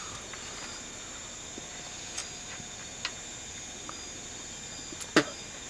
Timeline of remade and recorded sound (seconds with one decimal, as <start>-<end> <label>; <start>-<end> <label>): 0.0-5.7 recorded